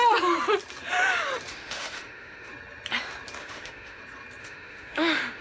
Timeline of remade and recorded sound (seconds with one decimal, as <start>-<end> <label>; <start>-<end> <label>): 0.0-1.5 recorded; 1.5-2.5 remade; 2.5-3.4 recorded; 3.4-4.0 remade; 4.0-4.4 recorded; 4.4-5.4 remade